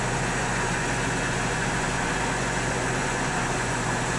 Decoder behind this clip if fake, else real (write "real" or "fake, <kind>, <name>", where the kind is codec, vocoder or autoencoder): fake, vocoder, Vocos